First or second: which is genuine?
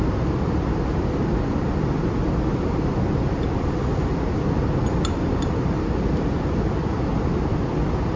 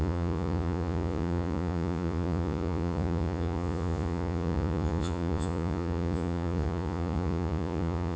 first